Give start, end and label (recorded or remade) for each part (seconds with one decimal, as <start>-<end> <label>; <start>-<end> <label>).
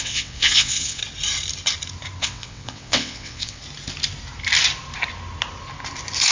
0.0-1.0 remade; 1.0-2.2 recorded; 2.2-3.6 remade; 3.6-6.3 recorded